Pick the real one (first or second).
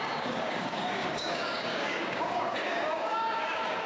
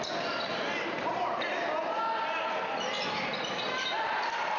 second